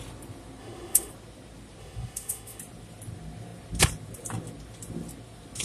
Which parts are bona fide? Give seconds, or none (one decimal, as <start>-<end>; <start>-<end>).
0.0-0.6; 1.1-1.8; 2.6-5.6